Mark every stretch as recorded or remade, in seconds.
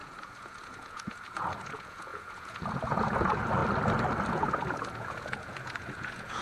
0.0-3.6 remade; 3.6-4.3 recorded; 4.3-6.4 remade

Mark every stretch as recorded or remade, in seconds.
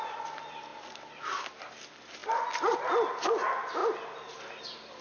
0.0-5.0 recorded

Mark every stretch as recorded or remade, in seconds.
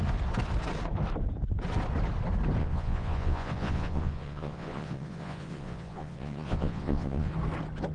0.0-2.6 recorded; 2.6-7.3 remade; 7.3-7.9 recorded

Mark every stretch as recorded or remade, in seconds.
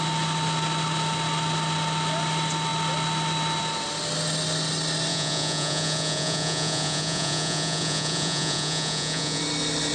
0.0-5.1 recorded; 5.1-9.4 remade; 9.4-9.9 recorded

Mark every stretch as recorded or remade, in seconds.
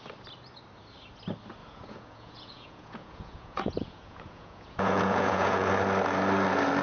0.0-1.6 recorded; 1.6-5.7 remade; 5.7-6.8 recorded